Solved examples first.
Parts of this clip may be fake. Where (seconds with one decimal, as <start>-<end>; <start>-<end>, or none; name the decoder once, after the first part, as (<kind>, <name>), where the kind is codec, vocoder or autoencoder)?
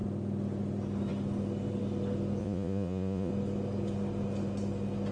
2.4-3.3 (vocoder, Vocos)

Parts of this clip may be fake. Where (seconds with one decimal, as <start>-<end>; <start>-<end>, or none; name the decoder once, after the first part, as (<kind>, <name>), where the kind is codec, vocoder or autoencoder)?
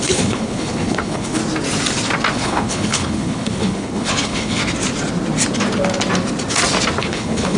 0.0-1.4 (codec, HILCodec); 2.3-4.6; 7.0-7.6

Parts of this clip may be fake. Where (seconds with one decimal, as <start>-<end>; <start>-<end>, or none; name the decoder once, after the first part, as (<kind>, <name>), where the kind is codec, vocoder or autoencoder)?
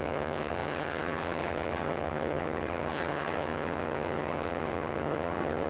0.0-5.7 (vocoder, HiFi-GAN)